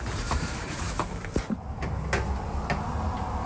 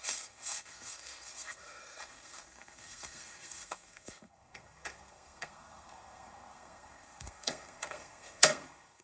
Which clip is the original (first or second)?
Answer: first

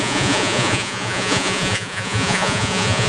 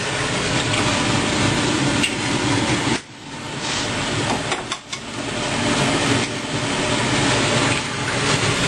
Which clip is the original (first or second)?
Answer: second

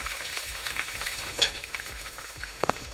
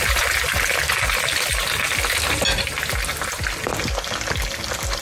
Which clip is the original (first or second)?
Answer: second